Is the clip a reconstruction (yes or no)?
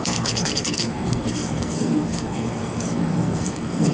yes